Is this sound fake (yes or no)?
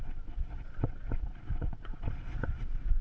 yes